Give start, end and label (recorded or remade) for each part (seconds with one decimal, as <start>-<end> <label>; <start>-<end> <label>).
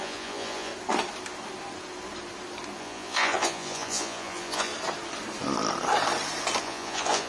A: 0.0-0.7 remade; 0.7-2.8 recorded; 2.8-4.7 remade; 4.7-6.6 recorded; 6.6-7.3 remade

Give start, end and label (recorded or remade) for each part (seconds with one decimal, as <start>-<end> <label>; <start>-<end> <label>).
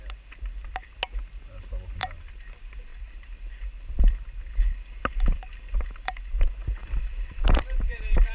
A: 0.0-2.0 recorded; 2.0-2.5 remade; 2.5-2.9 recorded; 2.9-6.3 remade; 6.3-6.8 recorded; 6.8-8.3 remade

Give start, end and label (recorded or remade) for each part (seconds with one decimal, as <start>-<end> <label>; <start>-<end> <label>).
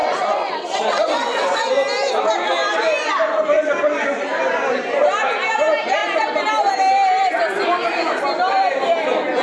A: 0.0-1.6 remade; 1.6-9.4 recorded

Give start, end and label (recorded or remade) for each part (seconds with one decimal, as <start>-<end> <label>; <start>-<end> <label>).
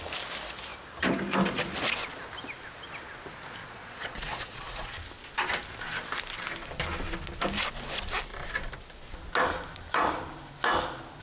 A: 0.0-3.6 recorded; 3.6-4.9 remade; 4.9-11.2 recorded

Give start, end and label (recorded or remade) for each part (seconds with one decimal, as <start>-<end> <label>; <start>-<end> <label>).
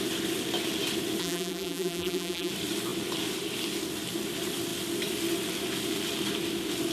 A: 0.0-1.2 recorded; 1.2-2.5 remade; 2.5-6.9 recorded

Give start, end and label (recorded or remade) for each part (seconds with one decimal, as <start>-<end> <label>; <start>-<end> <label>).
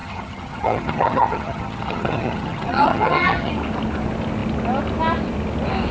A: 0.0-3.5 remade; 3.5-5.9 recorded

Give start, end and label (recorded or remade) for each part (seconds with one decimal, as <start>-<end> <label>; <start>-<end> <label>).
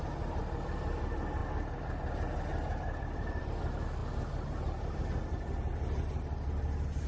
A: 0.0-7.1 recorded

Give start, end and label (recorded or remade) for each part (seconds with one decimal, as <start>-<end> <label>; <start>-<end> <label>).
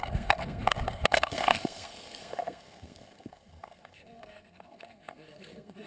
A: 0.0-5.9 remade